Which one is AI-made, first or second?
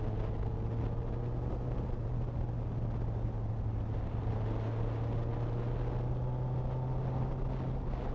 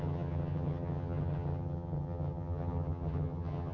second